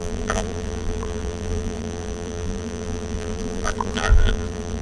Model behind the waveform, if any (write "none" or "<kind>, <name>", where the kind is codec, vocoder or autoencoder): vocoder, BigVGAN v2